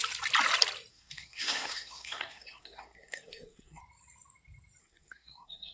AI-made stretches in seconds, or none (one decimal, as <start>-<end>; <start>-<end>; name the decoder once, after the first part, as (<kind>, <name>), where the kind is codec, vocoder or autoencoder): 0.9-3.8 (codec, SNAC); 4.8-5.7